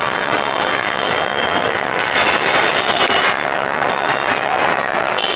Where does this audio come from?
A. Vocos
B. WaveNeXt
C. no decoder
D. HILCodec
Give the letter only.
B